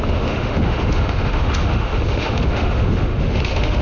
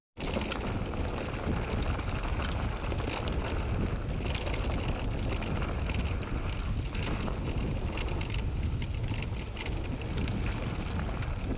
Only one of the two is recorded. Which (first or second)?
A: second